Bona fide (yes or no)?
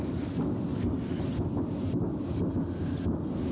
yes